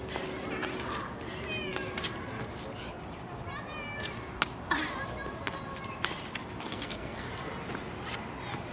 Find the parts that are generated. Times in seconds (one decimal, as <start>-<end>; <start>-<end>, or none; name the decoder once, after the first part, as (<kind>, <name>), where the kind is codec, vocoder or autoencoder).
6.7-7.3 (codec, SNAC)